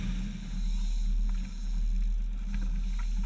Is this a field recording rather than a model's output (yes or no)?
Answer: yes